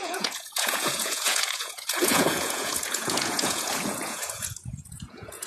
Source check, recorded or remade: remade